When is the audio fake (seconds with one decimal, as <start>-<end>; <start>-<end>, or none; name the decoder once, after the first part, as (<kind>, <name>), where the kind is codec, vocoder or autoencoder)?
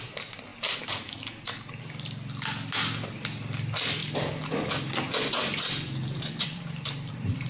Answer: 4.0-7.5 (vocoder, BigVGAN v2)